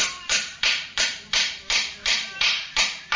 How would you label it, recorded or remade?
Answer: remade